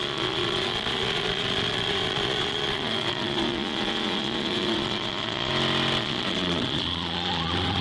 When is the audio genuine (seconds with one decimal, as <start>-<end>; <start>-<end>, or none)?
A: 5.5-6.0